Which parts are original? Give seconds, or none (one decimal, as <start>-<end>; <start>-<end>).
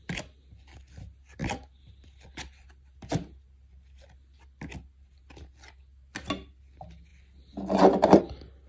0.0-8.7